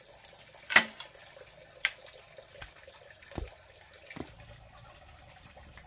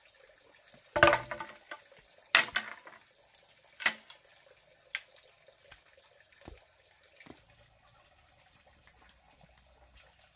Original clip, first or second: second